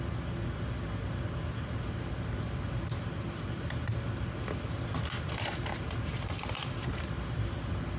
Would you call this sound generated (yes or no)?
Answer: no